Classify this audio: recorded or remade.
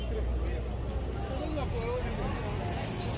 recorded